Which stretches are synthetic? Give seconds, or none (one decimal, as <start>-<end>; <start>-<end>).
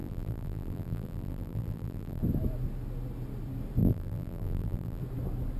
0.0-2.2; 3.8-5.0